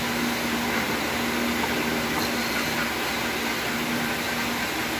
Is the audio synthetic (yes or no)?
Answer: no